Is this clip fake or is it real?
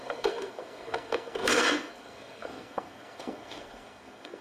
fake